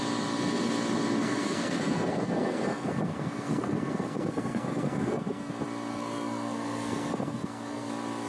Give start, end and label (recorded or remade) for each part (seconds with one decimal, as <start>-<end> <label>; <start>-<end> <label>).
0.0-1.2 recorded; 1.2-5.5 remade; 5.5-5.9 recorded; 5.9-7.9 remade; 7.9-8.3 recorded